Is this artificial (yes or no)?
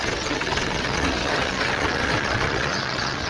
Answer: yes